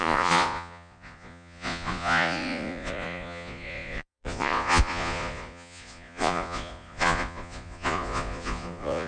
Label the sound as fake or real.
fake